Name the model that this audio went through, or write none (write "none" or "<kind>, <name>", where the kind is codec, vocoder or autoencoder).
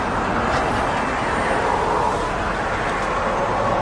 none